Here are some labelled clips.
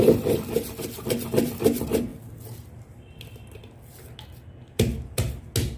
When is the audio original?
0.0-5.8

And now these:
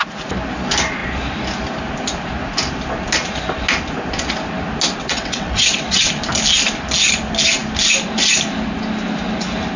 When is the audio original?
0.0-5.0; 6.1-9.8

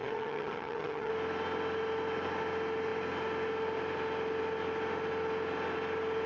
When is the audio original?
1.1-6.3

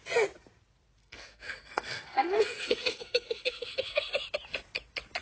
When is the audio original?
0.0-1.0; 4.1-5.2

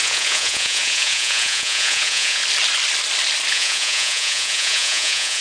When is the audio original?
2.4-3.5